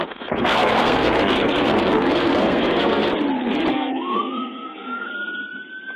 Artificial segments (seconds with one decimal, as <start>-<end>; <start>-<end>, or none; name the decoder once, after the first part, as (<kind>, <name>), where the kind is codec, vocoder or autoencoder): 0.0-3.1 (codec, SNAC); 3.7-5.1